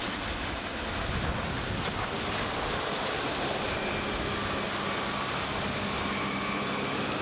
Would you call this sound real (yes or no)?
yes